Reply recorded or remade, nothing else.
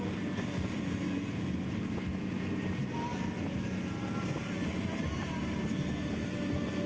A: recorded